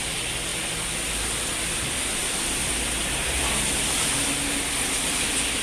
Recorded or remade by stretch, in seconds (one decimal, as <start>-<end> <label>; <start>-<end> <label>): 0.0-5.6 recorded